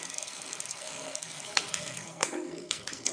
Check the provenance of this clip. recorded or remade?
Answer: remade